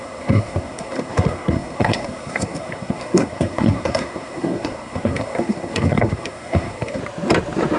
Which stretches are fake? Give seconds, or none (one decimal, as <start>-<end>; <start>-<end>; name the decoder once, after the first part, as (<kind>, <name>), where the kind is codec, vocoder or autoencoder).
0.0-7.0 (codec, SNAC)